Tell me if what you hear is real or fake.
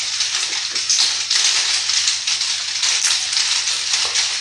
real